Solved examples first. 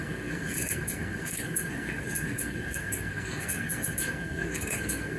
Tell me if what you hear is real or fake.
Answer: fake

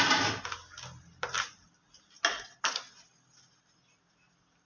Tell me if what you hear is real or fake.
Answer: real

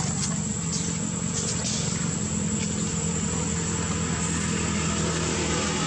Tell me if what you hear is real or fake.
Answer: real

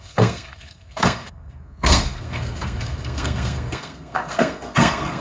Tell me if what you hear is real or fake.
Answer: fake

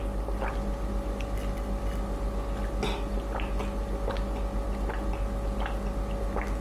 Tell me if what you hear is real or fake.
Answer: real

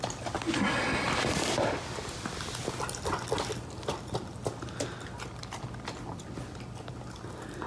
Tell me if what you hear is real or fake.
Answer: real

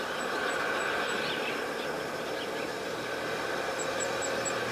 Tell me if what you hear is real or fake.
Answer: real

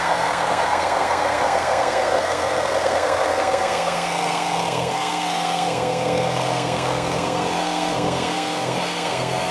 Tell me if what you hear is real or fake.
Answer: fake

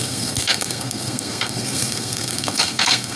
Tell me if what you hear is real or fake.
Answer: fake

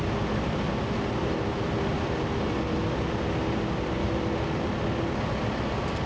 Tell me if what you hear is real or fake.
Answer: real